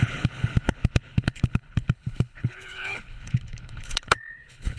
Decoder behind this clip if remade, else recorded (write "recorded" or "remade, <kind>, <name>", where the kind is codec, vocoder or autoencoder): remade, codec, HILCodec